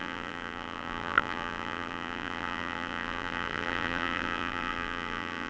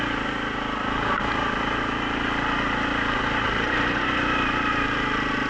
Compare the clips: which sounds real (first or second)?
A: second